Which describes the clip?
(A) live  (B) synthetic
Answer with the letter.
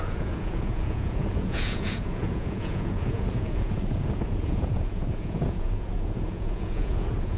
B